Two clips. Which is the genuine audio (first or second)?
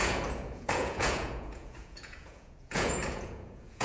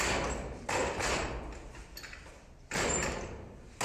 second